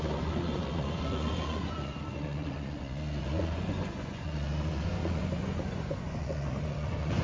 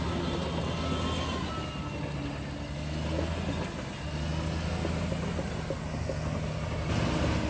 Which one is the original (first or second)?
second